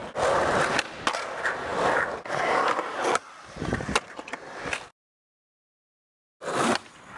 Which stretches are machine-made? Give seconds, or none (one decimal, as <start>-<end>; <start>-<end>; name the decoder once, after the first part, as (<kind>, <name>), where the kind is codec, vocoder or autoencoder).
none